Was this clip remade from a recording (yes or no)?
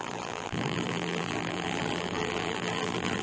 yes